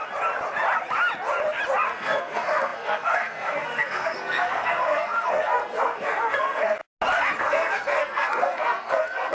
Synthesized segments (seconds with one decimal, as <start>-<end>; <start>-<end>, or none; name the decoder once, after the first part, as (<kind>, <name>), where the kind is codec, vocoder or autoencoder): 1.9-6.8 (codec, SNAC); 7.4-9.3